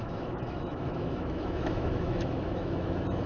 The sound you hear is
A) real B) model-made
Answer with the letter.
B